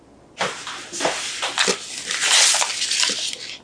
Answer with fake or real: real